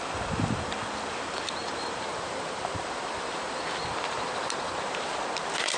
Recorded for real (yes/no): no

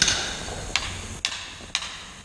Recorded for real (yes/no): yes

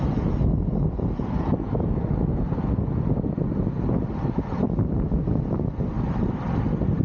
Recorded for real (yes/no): yes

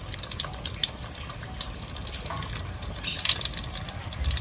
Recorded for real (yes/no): yes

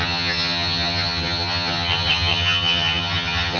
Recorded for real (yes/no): no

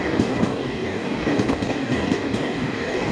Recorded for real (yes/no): no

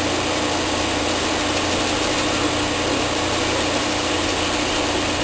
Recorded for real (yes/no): yes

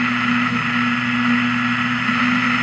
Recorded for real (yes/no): yes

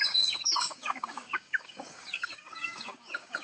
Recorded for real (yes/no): no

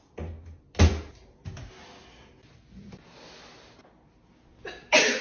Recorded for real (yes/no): yes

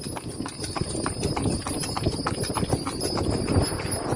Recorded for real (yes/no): yes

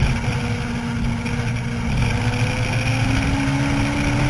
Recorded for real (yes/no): yes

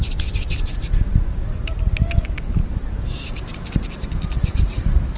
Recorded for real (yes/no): yes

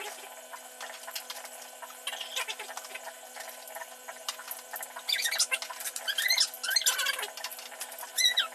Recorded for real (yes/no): yes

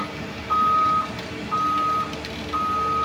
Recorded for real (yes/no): yes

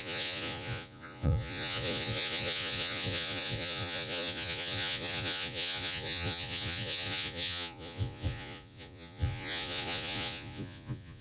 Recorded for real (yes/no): no